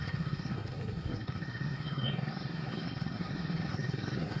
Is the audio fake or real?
fake